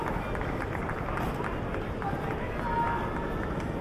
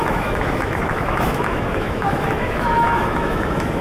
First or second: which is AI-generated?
second